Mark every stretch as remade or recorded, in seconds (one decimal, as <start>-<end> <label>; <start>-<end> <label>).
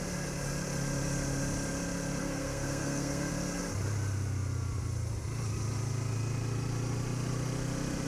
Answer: 0.0-2.2 recorded; 2.2-3.3 remade; 3.3-8.1 recorded